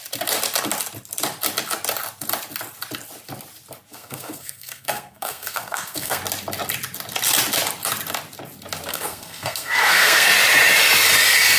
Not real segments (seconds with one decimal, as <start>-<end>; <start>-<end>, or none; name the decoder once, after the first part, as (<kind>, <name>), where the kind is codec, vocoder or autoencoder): 3.9-6.2 (codec, SNAC); 8.9-10.3

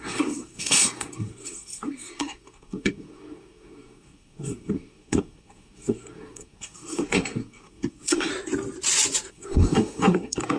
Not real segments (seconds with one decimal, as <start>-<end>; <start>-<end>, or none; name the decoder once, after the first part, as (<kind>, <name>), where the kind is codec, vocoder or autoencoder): 0.0-8.3 (codec, SNAC); 9.3-10.6

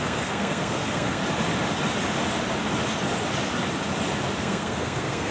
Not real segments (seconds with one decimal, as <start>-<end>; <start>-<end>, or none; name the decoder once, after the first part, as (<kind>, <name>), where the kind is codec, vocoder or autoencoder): 0.0-1.2 (codec, SNAC); 4.4-5.3

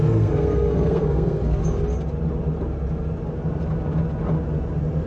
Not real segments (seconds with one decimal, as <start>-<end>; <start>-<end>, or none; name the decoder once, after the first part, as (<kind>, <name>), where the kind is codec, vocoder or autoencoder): 0.0-1.6 (codec, SNAC)

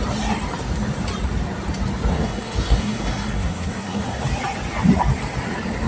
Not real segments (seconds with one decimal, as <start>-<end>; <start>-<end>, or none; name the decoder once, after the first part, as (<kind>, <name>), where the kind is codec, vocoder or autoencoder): 2.1-4.2 (codec, SNAC)